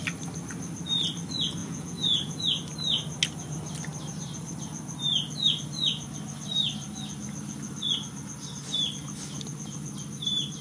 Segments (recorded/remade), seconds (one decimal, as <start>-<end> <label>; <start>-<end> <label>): 0.0-1.6 recorded; 1.6-2.4 remade; 2.4-10.6 recorded